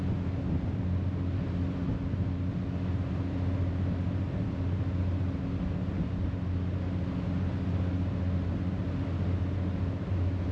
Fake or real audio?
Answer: real